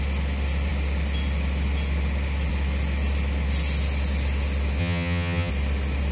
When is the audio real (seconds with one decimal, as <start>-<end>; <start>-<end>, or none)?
0.0-4.8; 5.5-6.1

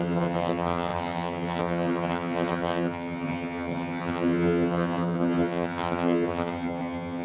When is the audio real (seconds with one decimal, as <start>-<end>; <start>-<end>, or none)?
none

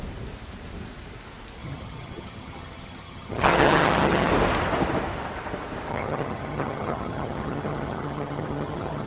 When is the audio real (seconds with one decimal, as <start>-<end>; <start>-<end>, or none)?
0.0-1.6; 4.3-5.9

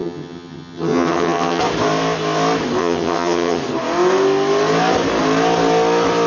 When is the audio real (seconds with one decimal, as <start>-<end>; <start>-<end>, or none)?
1.6-2.8; 3.6-6.3